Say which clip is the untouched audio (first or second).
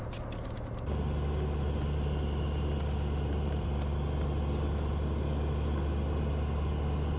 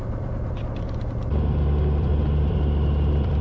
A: first